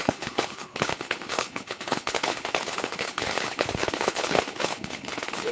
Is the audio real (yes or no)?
no